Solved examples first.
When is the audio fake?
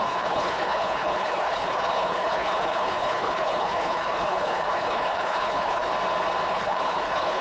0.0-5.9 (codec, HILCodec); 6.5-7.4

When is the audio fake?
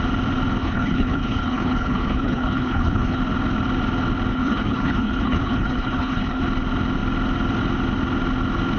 0.6-3.2 (codec, HILCodec); 4.3-6.4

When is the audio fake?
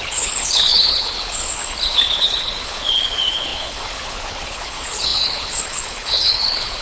0.0-6.8 (codec, HILCodec)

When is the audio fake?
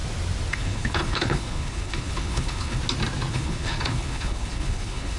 0.5-2.8 (codec, HILCodec); 3.3-5.2